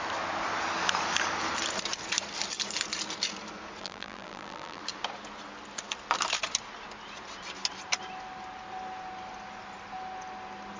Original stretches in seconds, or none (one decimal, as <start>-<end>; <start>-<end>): 0.0-3.8; 4.8-10.8